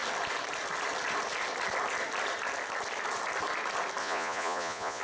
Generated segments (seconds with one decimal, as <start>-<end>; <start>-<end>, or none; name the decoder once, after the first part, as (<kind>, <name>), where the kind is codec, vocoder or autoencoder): 4.0-5.0 (vocoder, Vocos)